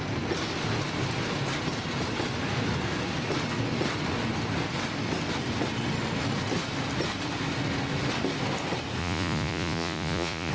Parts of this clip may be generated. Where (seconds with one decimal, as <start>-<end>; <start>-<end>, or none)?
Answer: 9.0-10.5